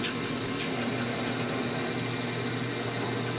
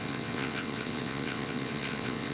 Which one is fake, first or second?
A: second